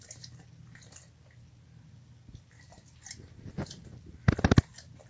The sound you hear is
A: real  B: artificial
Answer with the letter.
A